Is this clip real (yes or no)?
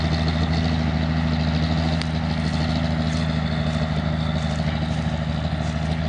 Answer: yes